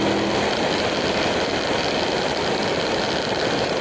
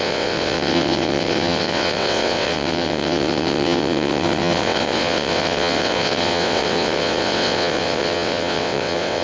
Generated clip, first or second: second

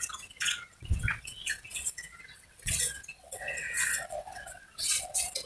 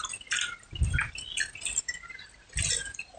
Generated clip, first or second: first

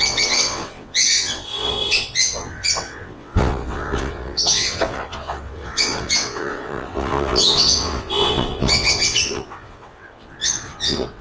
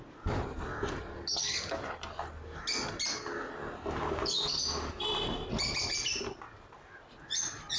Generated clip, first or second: first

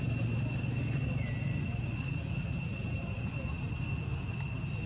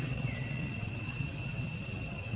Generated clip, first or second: second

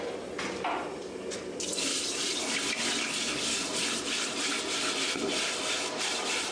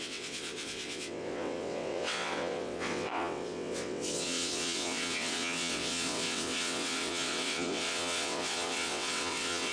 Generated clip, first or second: second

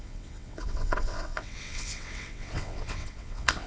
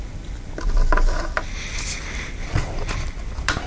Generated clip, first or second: first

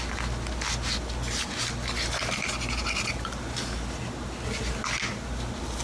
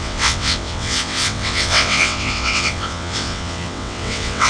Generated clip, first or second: second